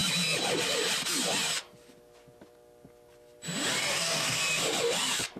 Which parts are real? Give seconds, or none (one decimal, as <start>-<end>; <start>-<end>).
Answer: 0.0-3.8; 4.4-5.4